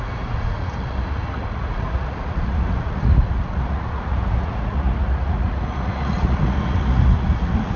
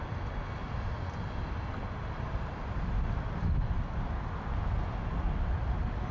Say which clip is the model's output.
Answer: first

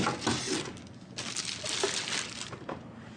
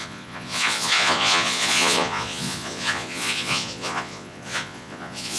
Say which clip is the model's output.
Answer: second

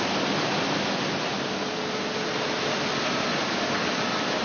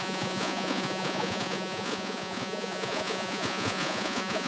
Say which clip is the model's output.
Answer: second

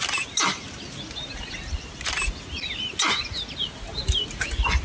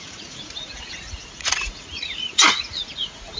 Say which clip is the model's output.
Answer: second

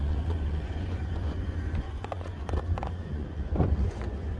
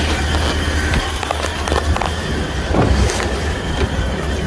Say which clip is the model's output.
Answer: first